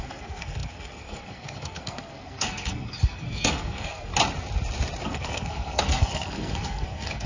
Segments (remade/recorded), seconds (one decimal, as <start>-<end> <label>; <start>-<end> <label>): 0.0-4.1 remade; 4.1-5.0 recorded; 5.0-7.3 remade